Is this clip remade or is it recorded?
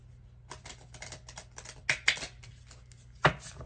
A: recorded